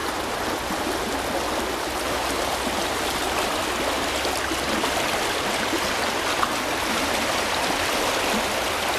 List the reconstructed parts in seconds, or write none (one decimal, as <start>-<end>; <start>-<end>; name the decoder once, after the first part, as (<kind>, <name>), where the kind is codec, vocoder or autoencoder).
none